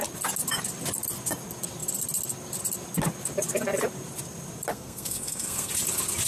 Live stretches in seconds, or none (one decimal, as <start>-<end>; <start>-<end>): 0.0-4.7; 5.7-6.3